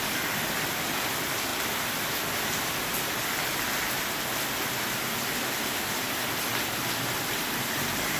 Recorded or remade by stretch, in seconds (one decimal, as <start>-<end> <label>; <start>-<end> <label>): 0.0-8.2 recorded